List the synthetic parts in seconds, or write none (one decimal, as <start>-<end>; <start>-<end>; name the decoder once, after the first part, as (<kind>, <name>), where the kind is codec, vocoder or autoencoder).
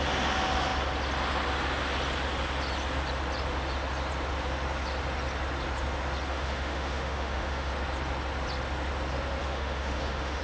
6.3-7.7 (autoencoder, DAC-VAE); 9.4-10.4